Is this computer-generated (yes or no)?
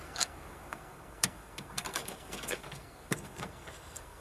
yes